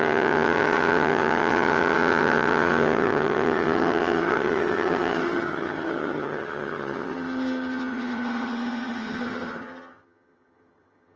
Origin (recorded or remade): remade